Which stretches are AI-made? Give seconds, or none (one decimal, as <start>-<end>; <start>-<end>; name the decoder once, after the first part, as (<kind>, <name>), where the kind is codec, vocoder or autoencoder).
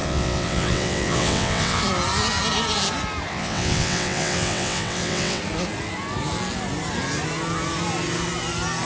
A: 0.0-1.8 (vocoder, WaveNeXt); 3.3-5.4